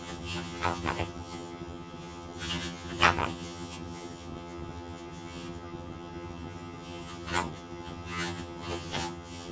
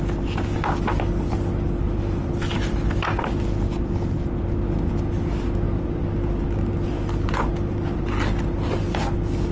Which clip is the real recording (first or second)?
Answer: second